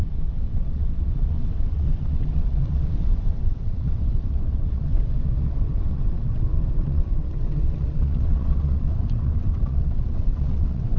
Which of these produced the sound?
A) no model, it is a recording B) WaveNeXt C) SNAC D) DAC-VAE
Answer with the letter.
B